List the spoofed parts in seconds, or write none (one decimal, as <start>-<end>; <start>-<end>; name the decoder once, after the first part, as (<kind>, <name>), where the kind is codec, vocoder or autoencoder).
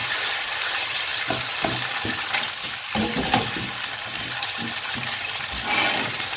none